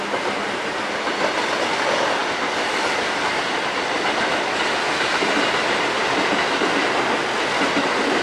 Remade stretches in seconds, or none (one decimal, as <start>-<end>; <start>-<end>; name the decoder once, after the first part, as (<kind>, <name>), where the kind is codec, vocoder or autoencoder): none